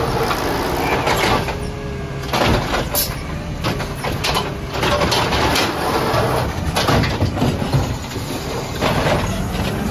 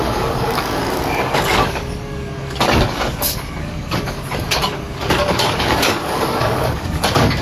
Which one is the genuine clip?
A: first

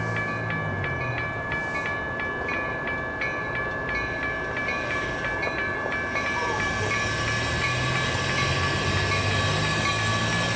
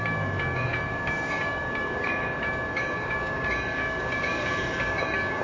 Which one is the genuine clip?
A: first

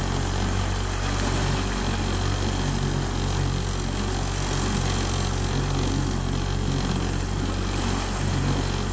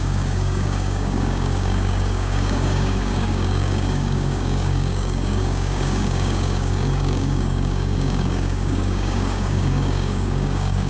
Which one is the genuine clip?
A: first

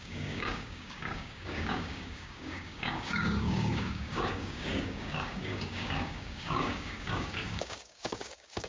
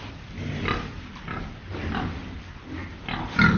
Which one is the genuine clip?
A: second